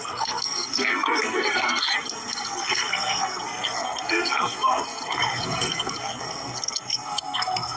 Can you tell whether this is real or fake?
fake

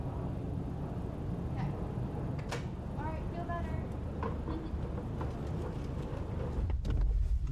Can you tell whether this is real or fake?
real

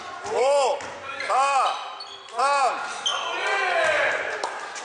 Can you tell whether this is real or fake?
real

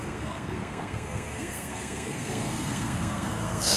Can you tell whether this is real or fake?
fake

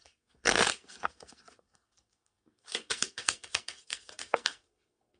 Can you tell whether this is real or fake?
fake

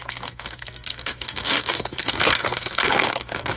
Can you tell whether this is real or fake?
fake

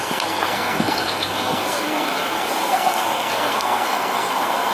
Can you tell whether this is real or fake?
fake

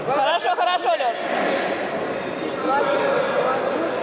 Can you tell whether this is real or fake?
real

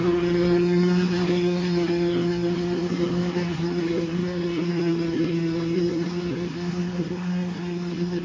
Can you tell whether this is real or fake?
fake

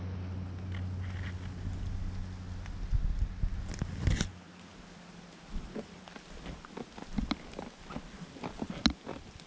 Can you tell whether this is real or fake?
real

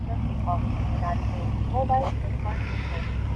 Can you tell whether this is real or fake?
real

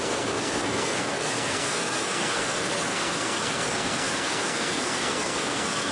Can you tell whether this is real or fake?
fake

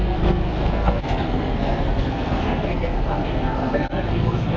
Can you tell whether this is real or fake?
fake